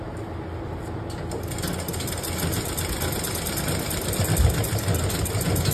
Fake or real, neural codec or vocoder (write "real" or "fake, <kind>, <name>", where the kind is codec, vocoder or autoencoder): real